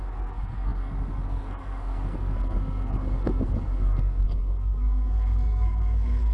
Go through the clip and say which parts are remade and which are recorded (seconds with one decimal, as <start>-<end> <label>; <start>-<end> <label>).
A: 0.0-6.3 remade